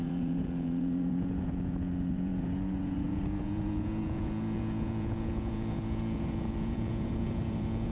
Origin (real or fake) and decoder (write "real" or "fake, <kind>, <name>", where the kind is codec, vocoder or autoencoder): fake, vocoder, Vocos